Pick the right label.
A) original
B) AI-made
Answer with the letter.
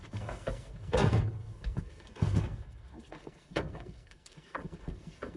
B